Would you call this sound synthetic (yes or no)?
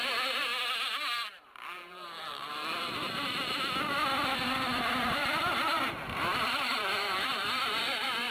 yes